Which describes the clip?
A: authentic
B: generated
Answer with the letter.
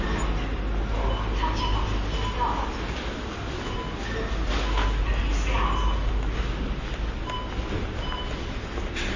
A